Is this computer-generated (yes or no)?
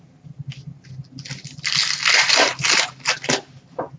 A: no